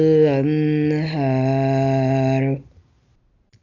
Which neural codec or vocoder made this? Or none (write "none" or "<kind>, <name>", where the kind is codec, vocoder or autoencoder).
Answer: none